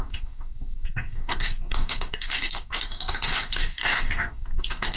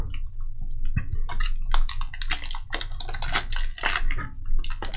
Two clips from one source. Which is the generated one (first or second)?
first